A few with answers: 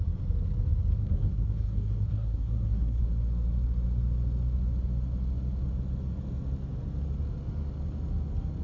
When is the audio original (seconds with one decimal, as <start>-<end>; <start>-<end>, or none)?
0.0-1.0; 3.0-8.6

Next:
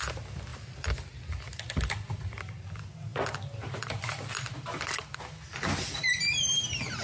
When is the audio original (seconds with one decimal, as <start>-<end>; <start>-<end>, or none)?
0.0-7.0

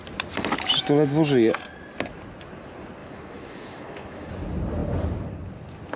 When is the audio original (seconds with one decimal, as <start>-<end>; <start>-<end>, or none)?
0.0-3.0; 4.3-6.0

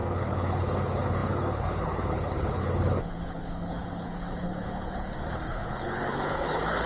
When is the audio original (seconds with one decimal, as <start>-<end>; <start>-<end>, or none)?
none

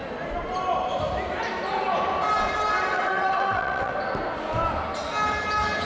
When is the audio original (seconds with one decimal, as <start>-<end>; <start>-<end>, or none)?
0.0-2.9; 3.9-5.9